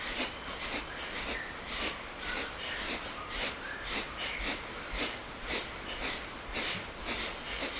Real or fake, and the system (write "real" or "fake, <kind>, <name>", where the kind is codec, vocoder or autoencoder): real